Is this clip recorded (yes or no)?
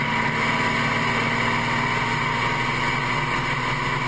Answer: yes